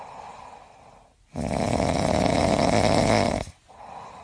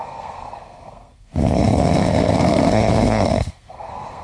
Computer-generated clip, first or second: second